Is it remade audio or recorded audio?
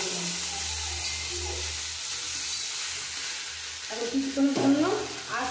recorded